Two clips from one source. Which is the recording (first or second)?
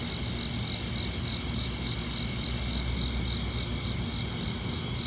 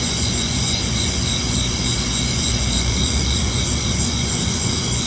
first